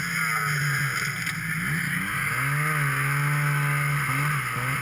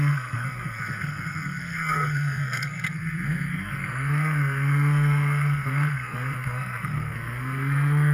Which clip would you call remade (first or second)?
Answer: second